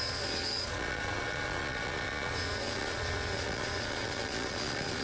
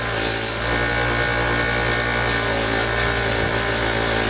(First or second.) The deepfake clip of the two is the first